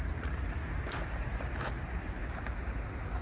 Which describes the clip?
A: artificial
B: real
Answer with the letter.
B